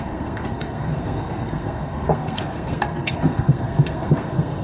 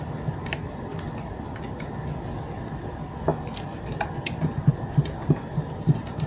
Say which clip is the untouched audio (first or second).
second